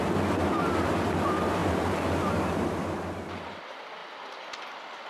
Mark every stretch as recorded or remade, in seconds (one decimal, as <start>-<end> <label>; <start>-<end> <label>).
0.0-5.1 recorded

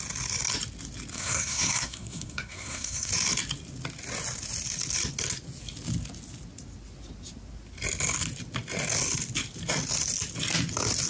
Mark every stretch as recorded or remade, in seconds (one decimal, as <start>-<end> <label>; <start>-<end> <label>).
0.0-1.1 recorded; 1.1-3.1 remade; 3.1-11.1 recorded